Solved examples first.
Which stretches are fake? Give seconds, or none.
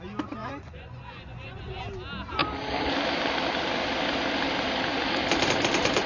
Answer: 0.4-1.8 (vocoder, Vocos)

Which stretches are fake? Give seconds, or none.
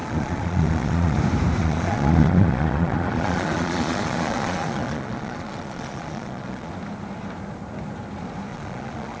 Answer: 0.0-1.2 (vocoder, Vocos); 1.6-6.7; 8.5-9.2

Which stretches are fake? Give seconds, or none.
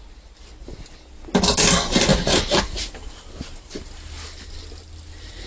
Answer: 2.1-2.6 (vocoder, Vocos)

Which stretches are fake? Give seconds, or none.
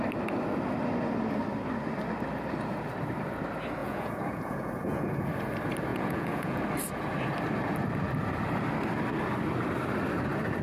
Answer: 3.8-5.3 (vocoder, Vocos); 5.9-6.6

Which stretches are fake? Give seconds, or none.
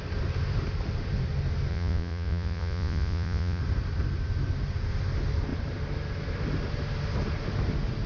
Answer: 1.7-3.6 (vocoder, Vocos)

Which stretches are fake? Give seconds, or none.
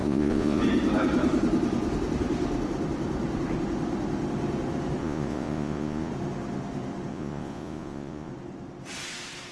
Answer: 0.0-0.6 (vocoder, Vocos); 5.0-6.1; 7.1-8.3